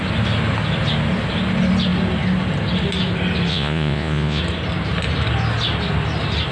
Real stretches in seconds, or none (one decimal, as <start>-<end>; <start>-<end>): 0.0-3.5; 4.4-6.5